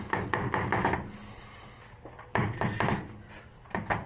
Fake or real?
real